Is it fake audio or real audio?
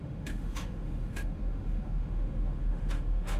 fake